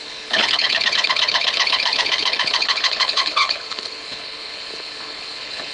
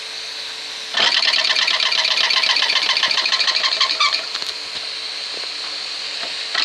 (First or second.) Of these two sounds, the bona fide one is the second